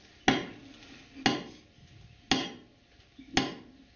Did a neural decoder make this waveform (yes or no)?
no